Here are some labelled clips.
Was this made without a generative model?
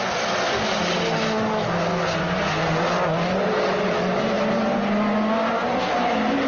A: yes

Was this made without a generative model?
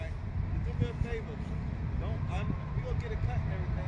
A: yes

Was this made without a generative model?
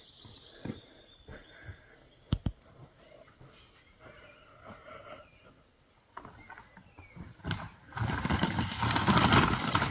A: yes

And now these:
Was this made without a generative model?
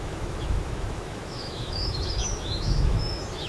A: no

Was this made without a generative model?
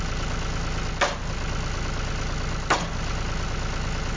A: yes